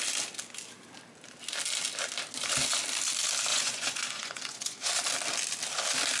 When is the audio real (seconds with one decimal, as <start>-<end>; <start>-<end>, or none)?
0.0-3.5; 4.9-6.2